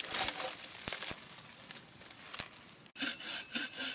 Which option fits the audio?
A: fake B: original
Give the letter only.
B